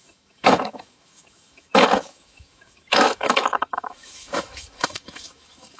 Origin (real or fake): fake